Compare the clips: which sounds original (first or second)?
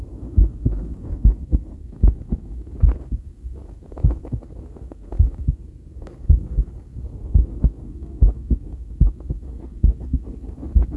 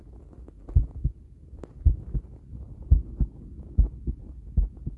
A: second